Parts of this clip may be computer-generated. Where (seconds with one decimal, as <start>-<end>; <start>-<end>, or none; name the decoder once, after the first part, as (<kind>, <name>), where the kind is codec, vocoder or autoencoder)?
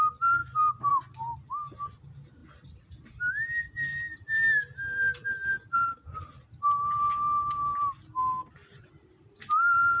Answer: none